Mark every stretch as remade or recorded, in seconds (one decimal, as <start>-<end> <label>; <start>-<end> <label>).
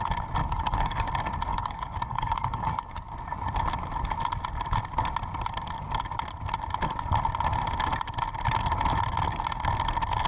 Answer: 0.0-0.4 recorded; 0.4-1.1 remade; 1.1-1.5 recorded; 1.5-3.1 remade; 3.1-10.3 recorded